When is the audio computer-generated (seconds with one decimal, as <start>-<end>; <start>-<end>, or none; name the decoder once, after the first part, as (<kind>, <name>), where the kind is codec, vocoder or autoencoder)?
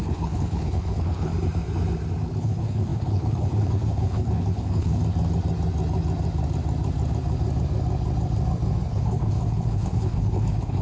0.0-1.3 (codec, HILCodec); 2.4-5.0; 8.9-10.8